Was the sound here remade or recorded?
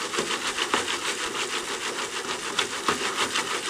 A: recorded